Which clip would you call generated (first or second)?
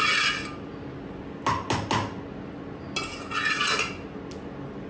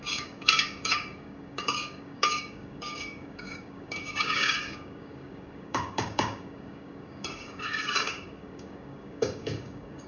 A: second